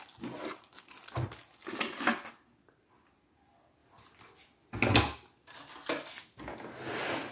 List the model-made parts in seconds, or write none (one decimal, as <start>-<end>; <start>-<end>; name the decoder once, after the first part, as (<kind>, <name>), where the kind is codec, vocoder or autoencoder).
none